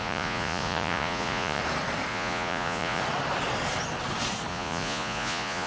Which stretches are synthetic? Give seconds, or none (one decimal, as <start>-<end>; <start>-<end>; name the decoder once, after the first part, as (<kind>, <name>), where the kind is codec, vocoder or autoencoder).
0.0-1.6 (vocoder, Vocos); 2.1-3.0; 4.5-5.7

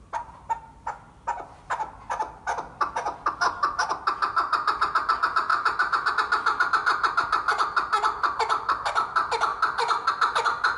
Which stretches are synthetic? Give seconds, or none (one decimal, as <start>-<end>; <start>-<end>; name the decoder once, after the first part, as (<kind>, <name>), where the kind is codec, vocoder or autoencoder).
none

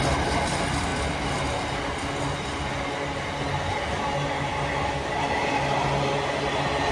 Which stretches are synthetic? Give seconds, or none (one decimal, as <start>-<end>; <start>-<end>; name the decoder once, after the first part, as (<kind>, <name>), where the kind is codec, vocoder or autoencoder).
none

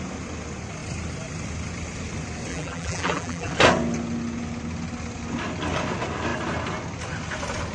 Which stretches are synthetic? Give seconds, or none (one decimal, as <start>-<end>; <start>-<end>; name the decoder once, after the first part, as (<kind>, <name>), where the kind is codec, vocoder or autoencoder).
2.5-3.5 (vocoder, BigVGAN v2)

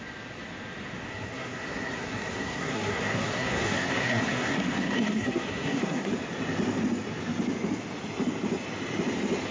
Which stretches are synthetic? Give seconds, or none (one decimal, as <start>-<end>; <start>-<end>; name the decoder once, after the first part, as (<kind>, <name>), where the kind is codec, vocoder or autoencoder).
1.1-6.1 (codec, SNAC)